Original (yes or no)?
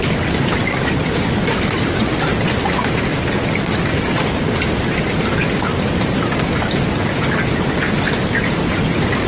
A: yes